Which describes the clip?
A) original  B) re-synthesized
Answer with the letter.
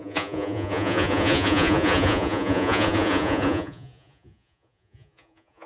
B